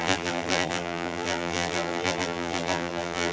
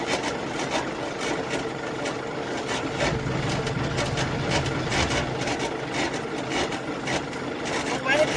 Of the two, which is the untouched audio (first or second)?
second